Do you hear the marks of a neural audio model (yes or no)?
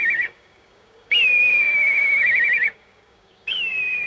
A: yes